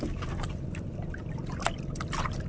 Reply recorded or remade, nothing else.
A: recorded